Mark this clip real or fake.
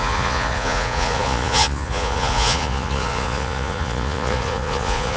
fake